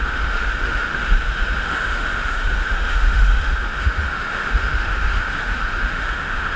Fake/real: fake